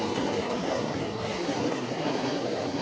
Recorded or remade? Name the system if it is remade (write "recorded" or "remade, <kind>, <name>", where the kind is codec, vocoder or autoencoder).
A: remade, codec, SNAC